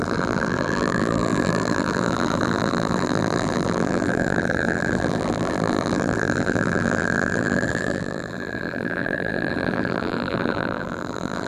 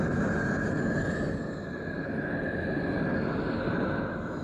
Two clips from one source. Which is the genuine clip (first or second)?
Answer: second